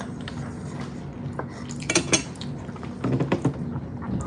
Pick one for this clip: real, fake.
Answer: real